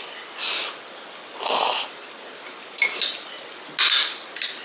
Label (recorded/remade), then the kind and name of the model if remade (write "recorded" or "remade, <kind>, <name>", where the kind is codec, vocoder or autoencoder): recorded